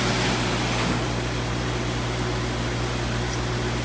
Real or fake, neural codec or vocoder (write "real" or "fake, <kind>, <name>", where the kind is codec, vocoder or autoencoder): real